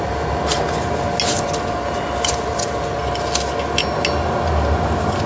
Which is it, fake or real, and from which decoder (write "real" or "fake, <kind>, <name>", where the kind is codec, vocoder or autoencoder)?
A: real